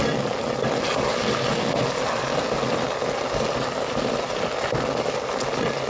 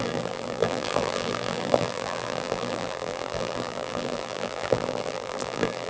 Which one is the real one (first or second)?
first